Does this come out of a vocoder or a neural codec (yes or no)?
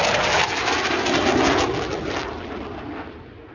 no